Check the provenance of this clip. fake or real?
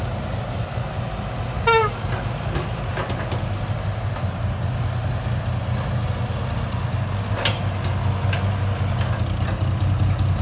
real